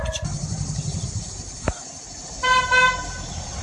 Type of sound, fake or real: fake